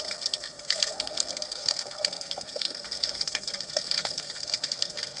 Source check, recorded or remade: remade